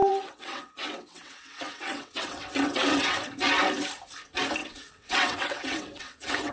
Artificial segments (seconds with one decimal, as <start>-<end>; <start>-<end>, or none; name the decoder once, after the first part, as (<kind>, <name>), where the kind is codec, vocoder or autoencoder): 0.0-3.1 (vocoder, WaveNeXt); 4.6-6.5